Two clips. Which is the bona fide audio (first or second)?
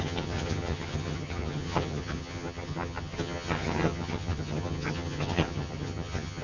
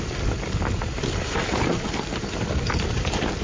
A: second